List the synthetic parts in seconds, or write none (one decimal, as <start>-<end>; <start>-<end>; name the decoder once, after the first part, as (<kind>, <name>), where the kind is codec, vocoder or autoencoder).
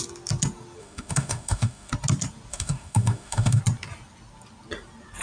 0.8-1.9 (autoencoder, DAC-VAE); 2.5-3.6